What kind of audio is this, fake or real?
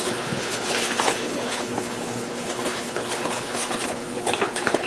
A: fake